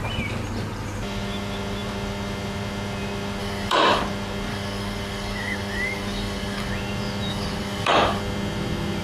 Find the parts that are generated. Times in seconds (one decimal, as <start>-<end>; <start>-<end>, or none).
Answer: 3.4-4.0; 4.5-6.7; 7.3-8.2

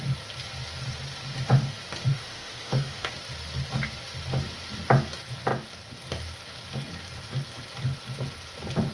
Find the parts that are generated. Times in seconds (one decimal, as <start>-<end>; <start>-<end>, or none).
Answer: 2.1-3.1